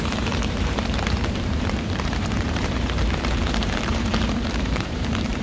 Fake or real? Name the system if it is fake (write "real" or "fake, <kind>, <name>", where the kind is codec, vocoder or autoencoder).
fake, vocoder, BigVGAN v2